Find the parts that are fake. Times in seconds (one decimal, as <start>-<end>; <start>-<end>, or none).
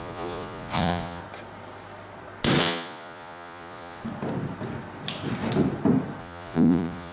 0.0-1.2; 2.6-4.0; 6.2-7.1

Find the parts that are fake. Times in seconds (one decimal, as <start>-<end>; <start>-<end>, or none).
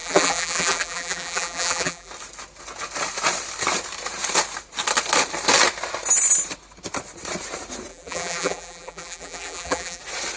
0.0-2.1; 7.9-10.0